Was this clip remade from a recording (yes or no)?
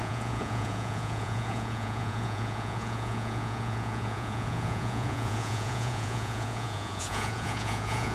yes